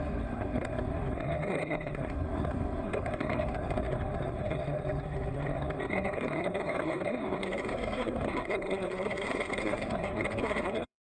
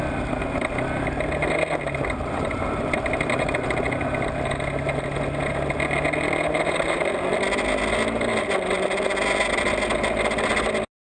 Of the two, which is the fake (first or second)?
first